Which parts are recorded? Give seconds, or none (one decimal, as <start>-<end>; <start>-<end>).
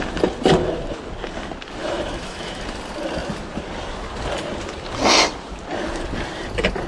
0.0-1.8; 2.6-6.9